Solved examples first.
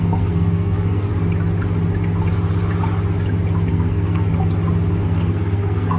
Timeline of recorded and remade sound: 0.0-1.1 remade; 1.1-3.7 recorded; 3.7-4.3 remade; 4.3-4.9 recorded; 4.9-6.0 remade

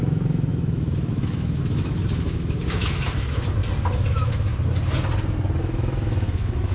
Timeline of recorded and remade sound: 0.0-3.6 remade; 3.6-4.1 recorded; 4.1-4.5 remade; 4.5-5.6 recorded; 5.6-6.7 remade

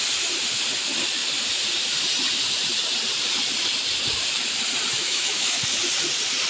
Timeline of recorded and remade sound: 0.0-5.0 recorded; 5.0-5.6 remade; 5.6-6.5 recorded

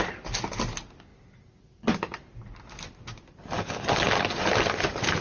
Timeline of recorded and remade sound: 0.0-5.2 recorded

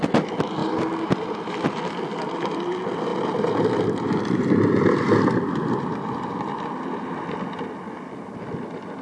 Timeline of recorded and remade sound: 0.0-0.6 recorded; 0.6-1.8 remade; 1.8-3.1 recorded; 3.1-7.6 remade; 7.6-9.0 recorded

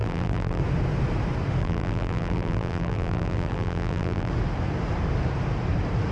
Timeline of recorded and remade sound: 0.0-0.6 remade; 0.6-1.6 recorded; 1.6-4.3 remade; 4.3-6.1 recorded

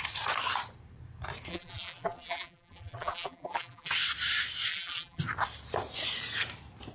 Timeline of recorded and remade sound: 0.0-1.5 recorded; 1.5-3.9 remade; 3.9-4.7 recorded; 4.7-5.2 remade; 5.2-6.9 recorded